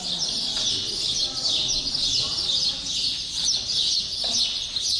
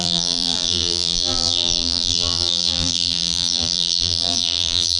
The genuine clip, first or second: first